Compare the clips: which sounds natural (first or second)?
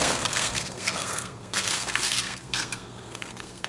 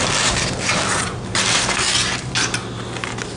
second